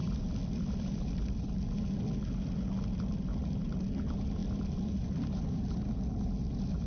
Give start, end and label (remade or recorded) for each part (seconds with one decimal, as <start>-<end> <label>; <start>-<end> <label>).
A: 0.0-1.9 remade; 1.9-6.9 recorded